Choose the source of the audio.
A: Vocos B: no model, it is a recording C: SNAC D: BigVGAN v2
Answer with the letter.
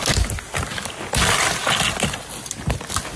B